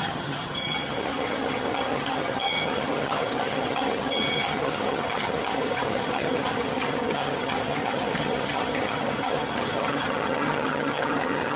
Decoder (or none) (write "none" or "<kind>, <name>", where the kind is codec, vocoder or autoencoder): vocoder, HiFi-GAN